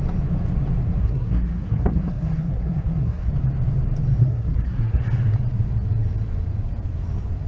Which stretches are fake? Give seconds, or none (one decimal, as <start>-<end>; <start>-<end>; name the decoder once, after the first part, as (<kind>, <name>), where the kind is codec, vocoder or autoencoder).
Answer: 1.0-3.3 (codec, SNAC); 4.2-5.0